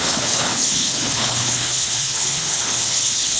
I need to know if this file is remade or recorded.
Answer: remade